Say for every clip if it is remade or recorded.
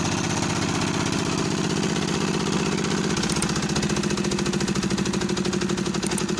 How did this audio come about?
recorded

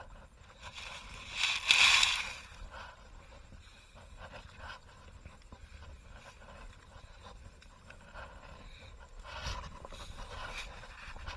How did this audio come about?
recorded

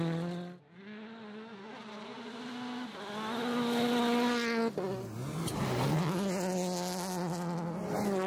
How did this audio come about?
recorded